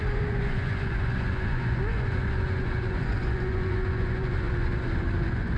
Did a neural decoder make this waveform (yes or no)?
yes